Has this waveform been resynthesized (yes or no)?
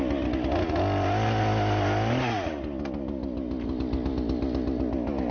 no